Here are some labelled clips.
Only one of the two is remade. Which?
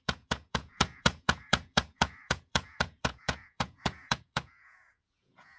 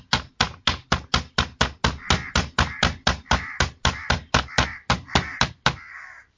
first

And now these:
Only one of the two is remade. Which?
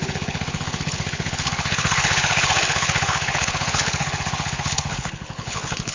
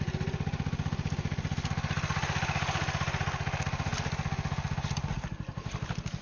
first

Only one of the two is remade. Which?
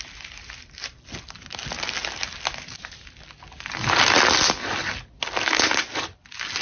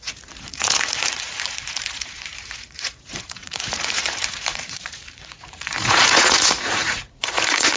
second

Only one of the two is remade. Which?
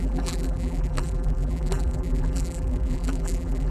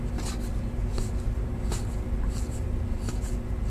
first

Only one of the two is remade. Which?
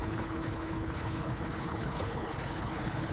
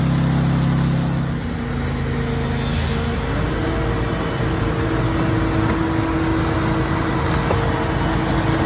first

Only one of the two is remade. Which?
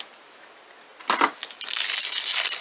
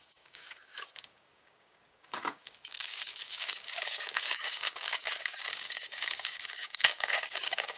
second